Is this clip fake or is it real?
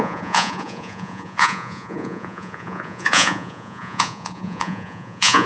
fake